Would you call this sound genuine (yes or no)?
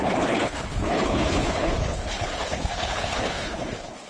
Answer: no